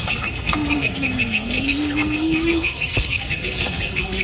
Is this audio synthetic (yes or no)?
yes